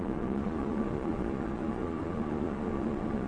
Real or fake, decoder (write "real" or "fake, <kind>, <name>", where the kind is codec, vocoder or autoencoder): fake, vocoder, Vocos